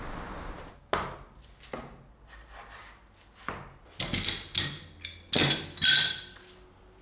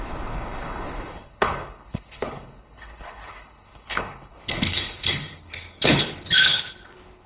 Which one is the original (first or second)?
first